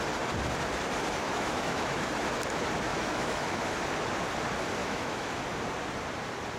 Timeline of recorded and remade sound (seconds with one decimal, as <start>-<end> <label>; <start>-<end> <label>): 0.0-1.2 recorded; 1.2-2.1 remade; 2.1-2.9 recorded; 2.9-3.6 remade; 3.6-4.8 recorded; 4.8-5.4 remade; 5.4-6.6 recorded